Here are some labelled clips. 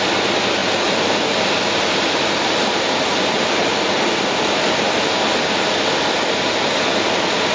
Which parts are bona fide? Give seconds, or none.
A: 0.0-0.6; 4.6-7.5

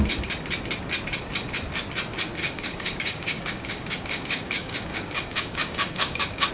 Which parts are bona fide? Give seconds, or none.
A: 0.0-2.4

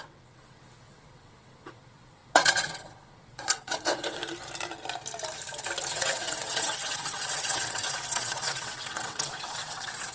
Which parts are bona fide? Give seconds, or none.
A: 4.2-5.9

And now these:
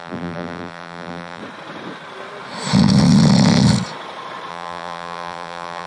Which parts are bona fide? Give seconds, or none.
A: 1.4-4.5

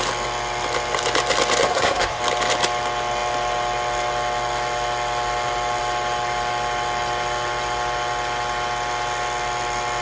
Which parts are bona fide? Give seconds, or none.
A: 0.0-1.7; 2.2-10.0

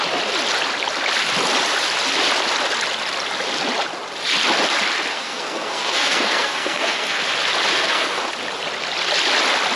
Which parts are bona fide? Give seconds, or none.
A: 0.0-5.1; 7.2-7.7; 8.3-9.8